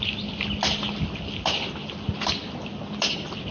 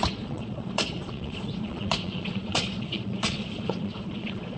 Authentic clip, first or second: first